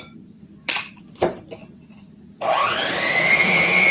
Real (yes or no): no